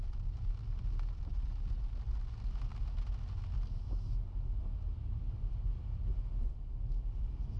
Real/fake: real